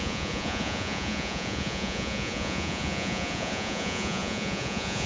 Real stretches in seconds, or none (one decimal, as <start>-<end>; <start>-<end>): none